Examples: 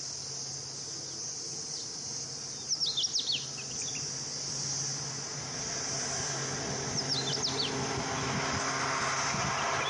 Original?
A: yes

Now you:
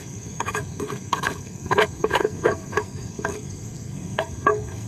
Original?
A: no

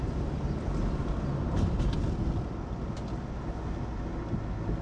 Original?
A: yes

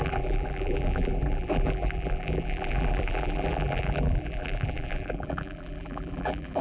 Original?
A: no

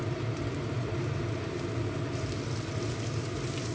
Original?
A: yes